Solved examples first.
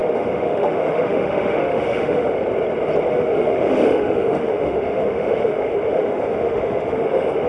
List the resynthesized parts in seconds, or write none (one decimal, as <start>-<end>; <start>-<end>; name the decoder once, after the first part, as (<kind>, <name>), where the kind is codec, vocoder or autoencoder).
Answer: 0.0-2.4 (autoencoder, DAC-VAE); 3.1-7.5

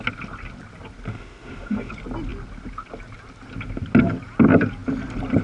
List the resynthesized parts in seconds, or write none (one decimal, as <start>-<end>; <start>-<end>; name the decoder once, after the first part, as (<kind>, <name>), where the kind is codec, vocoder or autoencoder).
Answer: 1.1-1.9 (autoencoder, DAC-VAE)

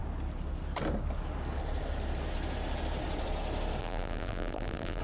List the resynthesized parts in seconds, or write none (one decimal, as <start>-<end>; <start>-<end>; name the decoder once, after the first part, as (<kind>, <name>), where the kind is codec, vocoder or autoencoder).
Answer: 3.8-5.0 (vocoder, BigVGAN v2)